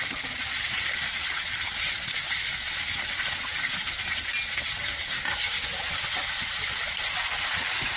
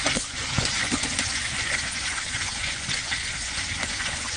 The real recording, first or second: first